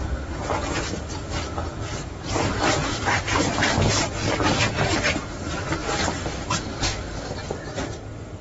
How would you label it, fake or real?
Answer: real